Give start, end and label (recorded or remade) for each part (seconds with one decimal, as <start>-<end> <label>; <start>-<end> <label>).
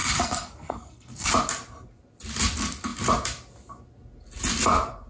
0.0-1.3 remade; 1.3-5.1 recorded